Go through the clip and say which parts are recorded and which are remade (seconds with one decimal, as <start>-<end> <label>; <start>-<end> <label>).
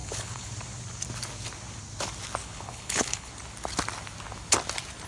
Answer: 0.0-0.5 remade; 0.5-2.4 recorded; 2.4-3.3 remade; 3.3-5.1 recorded